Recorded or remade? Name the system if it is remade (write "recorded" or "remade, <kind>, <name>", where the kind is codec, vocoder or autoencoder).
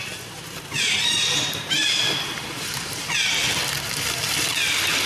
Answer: recorded